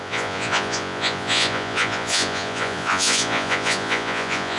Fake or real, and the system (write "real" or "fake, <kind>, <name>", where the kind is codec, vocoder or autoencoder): fake, vocoder, Vocos